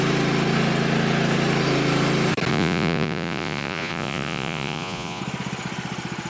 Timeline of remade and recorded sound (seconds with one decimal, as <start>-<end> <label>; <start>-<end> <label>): 0.0-2.5 recorded; 2.5-5.2 remade; 5.2-6.3 recorded